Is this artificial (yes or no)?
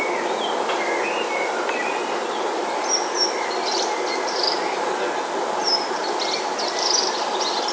no